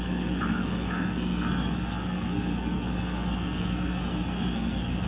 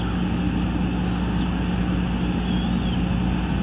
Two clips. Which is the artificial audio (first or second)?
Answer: first